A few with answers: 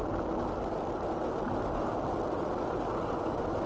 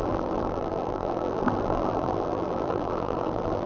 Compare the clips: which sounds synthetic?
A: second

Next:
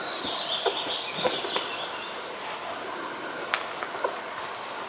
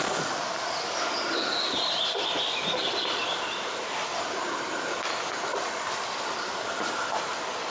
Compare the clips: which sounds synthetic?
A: second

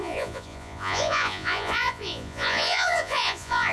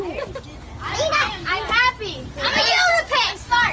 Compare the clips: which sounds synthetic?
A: first